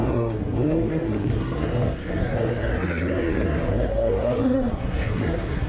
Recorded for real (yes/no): no